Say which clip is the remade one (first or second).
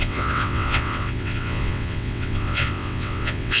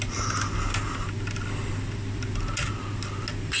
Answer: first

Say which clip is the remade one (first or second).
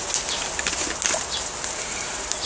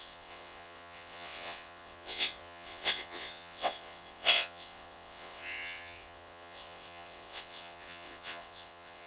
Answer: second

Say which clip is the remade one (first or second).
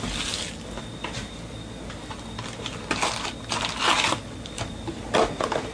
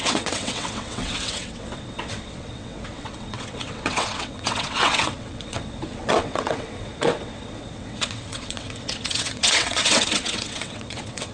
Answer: second